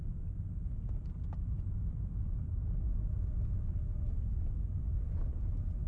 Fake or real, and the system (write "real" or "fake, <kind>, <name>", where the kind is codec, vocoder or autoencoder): real